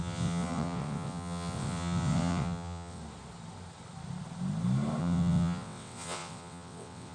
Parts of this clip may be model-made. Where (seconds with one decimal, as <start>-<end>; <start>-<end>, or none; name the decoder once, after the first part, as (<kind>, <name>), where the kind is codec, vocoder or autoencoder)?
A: 0.0-3.0 (vocoder, WaveNeXt); 5.0-7.1